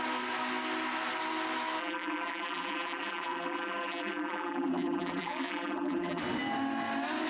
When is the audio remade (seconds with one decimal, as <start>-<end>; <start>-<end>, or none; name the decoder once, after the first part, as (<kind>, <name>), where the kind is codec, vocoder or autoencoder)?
1.8-6.2 (vocoder, BigVGAN v2)